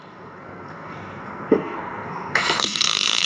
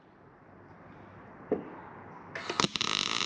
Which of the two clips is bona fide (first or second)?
second